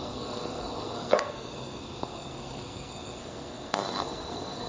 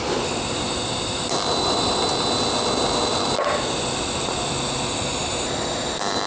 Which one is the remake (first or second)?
first